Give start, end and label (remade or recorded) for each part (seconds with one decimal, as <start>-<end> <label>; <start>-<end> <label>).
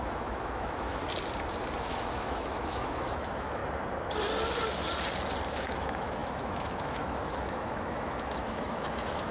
0.0-1.0 remade; 1.0-1.8 recorded; 1.8-3.6 remade; 3.6-5.5 recorded; 5.5-9.3 remade